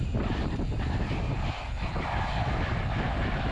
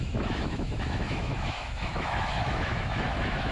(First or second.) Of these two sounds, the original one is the first